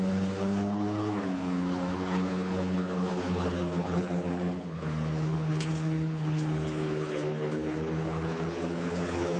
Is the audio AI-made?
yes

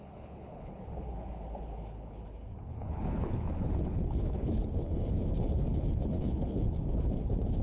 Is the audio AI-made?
yes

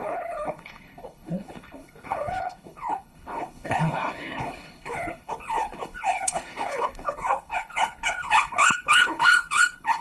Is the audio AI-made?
yes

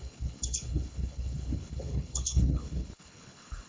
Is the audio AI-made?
yes